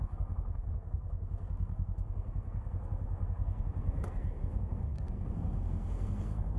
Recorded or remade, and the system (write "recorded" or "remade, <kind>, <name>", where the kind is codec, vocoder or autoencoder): remade, codec, SNAC